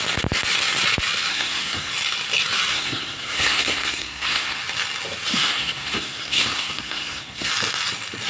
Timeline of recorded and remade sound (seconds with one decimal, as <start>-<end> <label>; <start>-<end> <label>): 0.0-1.3 recorded; 1.3-1.9 remade; 1.9-2.7 recorded; 2.7-4.6 remade; 4.6-5.3 recorded; 5.3-7.5 remade; 7.5-8.3 recorded